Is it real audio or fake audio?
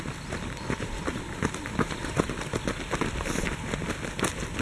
real